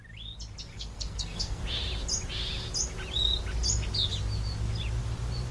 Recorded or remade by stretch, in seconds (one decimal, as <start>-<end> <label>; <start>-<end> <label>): 0.0-0.7 recorded; 0.7-1.6 remade; 1.6-5.5 recorded